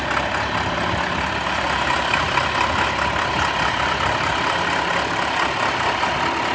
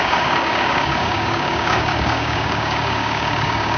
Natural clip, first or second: first